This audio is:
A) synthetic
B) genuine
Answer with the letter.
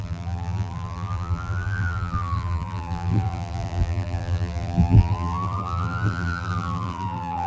A